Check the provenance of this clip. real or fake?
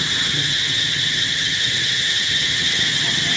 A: fake